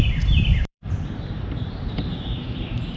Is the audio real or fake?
fake